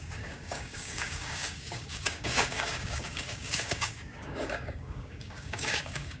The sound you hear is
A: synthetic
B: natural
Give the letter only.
A